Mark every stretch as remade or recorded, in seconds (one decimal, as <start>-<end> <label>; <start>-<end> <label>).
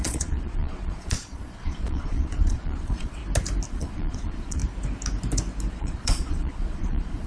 0.0-3.2 remade; 3.2-3.7 recorded; 3.7-4.6 remade; 4.6-5.7 recorded; 5.7-7.3 remade